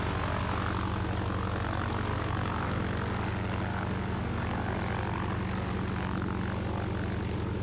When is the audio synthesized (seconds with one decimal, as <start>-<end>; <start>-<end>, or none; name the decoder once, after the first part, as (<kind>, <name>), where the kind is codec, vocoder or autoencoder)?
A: 2.1-2.8 (codec, DAC); 3.7-4.8